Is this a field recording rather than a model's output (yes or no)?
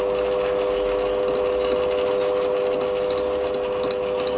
yes